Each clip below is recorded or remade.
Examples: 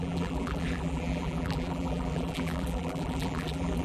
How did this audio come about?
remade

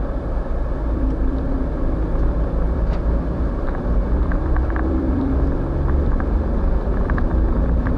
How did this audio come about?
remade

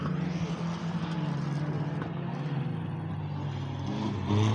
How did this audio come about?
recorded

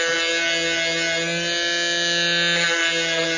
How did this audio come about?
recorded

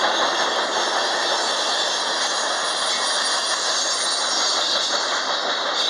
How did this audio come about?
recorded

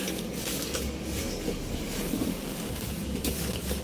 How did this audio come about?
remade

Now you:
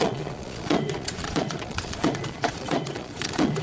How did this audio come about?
remade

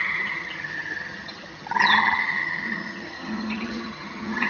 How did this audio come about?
remade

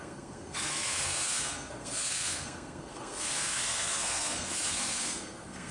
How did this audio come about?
remade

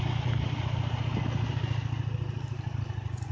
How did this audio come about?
recorded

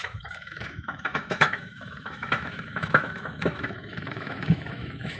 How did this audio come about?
remade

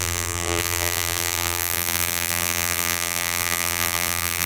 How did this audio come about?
remade